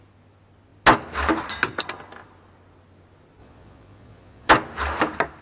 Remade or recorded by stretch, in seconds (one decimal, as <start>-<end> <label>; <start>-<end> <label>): 0.0-3.4 recorded; 3.4-4.5 remade; 4.5-5.4 recorded